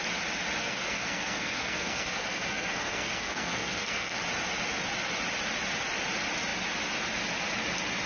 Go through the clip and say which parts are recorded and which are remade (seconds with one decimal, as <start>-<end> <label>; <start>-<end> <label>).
0.0-0.6 recorded; 0.6-4.2 remade; 4.2-8.1 recorded